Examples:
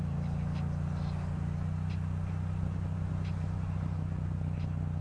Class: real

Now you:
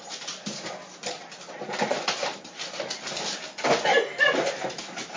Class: real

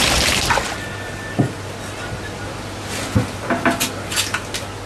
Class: real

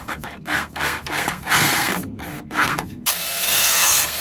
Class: fake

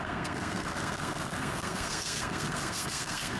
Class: fake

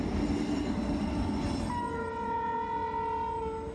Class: real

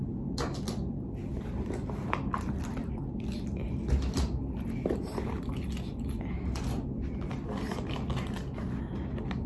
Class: real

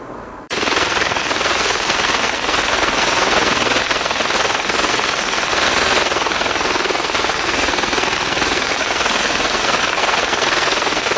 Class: fake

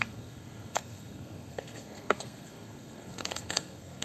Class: fake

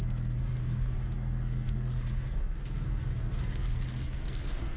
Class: fake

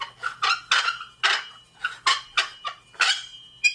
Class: real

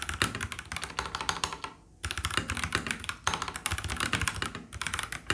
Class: real